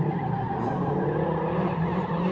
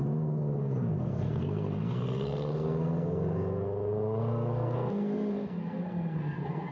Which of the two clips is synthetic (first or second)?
second